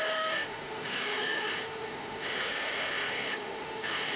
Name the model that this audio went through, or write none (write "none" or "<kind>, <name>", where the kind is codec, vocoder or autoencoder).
autoencoder, DAC-VAE